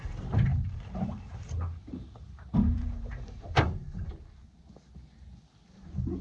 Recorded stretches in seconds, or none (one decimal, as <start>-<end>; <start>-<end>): 0.0-0.5; 4.1-6.2